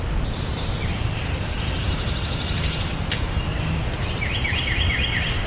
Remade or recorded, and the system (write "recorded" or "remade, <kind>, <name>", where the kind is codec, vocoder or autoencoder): recorded